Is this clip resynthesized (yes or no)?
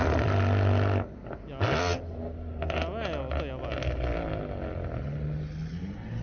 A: no